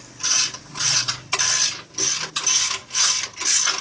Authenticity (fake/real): real